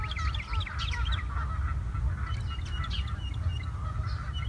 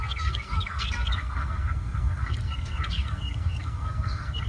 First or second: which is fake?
second